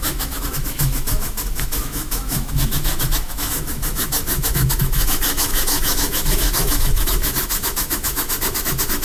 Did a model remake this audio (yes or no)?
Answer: yes